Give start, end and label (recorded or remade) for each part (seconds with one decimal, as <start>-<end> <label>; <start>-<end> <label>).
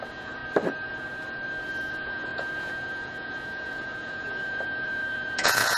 0.0-0.4 remade; 0.4-1.9 recorded; 1.9-5.8 remade